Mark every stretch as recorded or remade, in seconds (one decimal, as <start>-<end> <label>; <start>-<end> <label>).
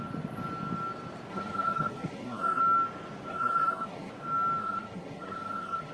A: 0.0-1.3 recorded; 1.3-2.6 remade; 2.6-3.3 recorded; 3.3-4.1 remade; 4.1-4.6 recorded; 4.6-5.9 remade